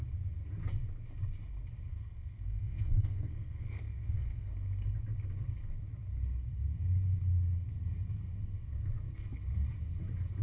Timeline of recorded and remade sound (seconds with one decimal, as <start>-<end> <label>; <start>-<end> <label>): 0.0-1.9 recorded; 1.9-4.5 remade; 4.5-10.4 recorded